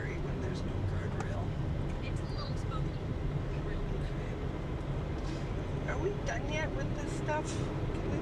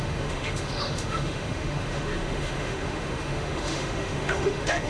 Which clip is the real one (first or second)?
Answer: first